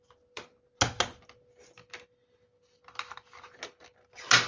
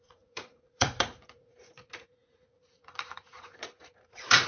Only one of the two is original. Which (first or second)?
first